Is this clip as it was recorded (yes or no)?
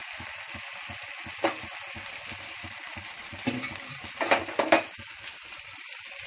yes